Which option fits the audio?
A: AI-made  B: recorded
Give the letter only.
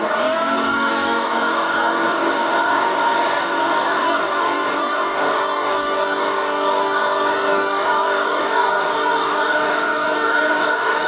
A